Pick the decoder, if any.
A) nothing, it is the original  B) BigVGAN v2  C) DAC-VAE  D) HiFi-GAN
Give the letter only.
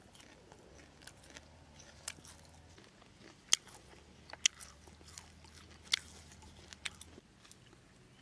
A